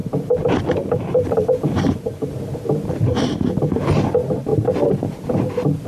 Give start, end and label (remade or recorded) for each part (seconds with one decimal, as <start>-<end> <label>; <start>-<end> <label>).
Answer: 0.0-2.4 remade; 2.4-3.1 recorded; 3.1-3.8 remade; 3.8-5.9 recorded